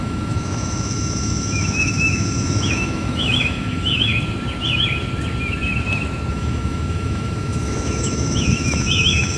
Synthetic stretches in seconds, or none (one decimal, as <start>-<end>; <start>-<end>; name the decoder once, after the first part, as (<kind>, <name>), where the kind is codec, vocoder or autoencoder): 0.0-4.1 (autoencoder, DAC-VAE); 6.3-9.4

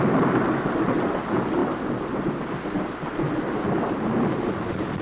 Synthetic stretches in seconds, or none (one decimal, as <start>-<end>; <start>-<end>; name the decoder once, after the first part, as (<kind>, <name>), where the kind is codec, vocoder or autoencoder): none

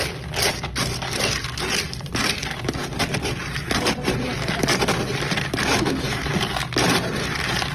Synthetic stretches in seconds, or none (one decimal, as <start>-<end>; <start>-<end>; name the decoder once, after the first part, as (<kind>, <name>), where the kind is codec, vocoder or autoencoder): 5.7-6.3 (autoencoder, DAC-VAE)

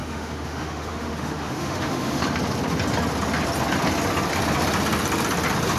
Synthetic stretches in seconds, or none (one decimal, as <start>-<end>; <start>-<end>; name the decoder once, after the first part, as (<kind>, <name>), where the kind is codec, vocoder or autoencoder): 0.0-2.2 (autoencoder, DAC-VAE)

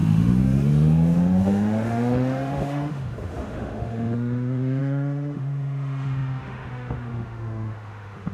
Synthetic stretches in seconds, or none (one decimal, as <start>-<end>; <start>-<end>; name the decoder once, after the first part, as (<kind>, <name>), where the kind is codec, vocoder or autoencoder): 0.0-8.3 (autoencoder, DAC-VAE)

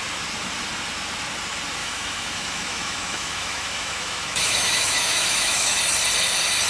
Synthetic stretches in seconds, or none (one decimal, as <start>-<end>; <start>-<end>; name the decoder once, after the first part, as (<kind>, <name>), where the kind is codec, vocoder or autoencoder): 1.8-5.8 (autoencoder, DAC-VAE)